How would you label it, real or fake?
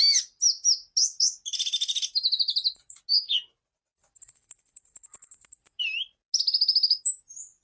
real